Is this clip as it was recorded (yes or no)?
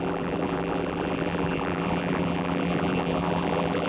no